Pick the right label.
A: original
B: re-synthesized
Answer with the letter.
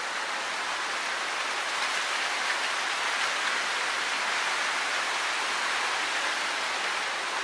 A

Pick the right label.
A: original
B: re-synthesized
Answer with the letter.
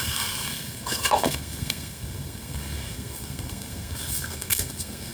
B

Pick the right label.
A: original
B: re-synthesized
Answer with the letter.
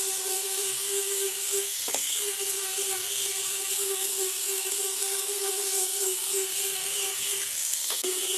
B